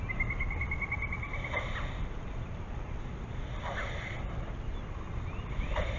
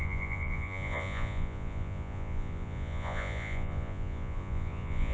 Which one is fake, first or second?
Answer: second